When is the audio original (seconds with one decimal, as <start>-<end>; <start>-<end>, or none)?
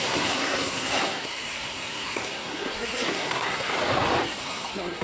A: 3.7-4.4